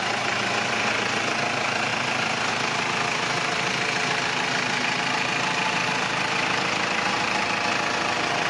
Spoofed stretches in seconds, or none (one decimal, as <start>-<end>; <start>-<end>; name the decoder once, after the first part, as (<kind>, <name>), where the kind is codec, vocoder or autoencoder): none